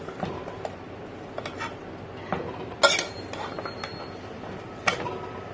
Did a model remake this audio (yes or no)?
no